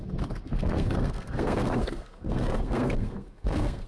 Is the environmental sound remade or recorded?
remade